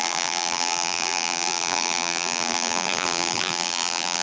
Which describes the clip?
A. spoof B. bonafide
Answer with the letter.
A